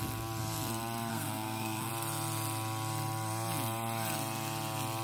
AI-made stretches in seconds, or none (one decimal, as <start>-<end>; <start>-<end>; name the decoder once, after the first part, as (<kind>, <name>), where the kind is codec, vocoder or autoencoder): 1.1-1.9 (codec, SNAC)